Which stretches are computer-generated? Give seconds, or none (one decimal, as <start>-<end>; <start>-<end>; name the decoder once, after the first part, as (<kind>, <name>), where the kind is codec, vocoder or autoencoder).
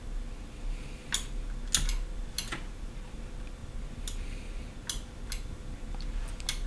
none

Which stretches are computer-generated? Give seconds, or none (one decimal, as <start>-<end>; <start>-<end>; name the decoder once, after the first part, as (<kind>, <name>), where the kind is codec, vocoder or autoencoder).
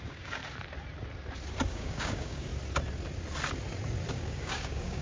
0.0-0.4 (codec, DAC); 1.7-2.5; 4.1-5.0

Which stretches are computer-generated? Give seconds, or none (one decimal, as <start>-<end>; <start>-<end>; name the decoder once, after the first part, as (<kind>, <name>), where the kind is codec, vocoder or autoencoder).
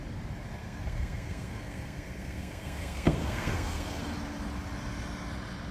0.6-4.0 (codec, SNAC)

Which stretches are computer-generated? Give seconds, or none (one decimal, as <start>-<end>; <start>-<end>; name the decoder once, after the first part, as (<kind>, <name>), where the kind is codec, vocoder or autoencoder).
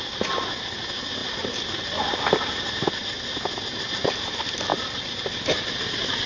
none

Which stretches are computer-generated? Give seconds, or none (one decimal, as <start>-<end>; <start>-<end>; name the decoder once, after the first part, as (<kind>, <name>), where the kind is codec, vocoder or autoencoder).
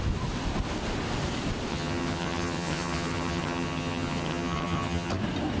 1.7-5.1 (vocoder, HiFi-GAN)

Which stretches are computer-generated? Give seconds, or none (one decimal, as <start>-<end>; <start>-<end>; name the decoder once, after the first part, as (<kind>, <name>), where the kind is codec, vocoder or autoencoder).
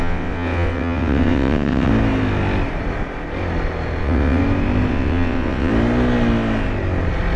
0.0-1.9 (vocoder, WaveNeXt); 4.0-4.4; 4.9-5.7